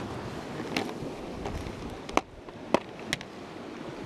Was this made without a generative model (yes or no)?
yes